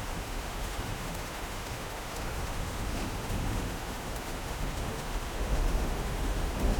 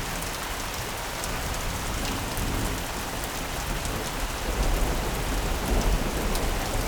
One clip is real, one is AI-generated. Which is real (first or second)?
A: second